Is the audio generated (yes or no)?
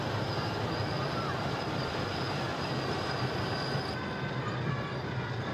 no